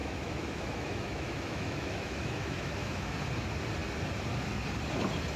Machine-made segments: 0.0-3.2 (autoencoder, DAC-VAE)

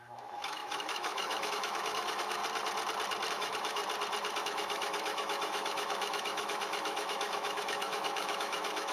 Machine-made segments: 0.0-2.4 (autoencoder, DAC-VAE); 3.3-3.8; 4.4-8.9

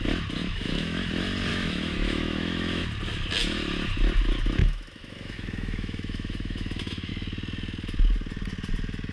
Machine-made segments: 0.4-1.1 (autoencoder, DAC-VAE); 1.5-2.8; 4.6-7.1

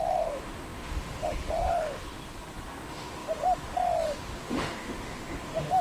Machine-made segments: 0.0-2.2 (autoencoder, DAC-VAE); 2.8-5.8